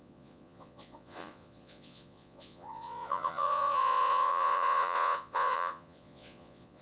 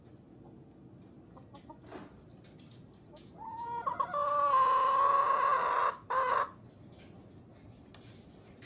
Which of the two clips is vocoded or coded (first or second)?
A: first